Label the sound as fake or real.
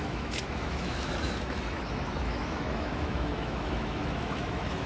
fake